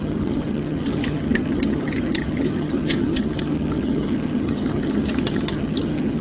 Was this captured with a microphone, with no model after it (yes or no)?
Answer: no